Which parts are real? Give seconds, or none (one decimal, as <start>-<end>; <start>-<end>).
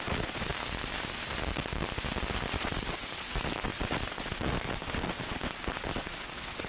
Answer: 0.5-2.5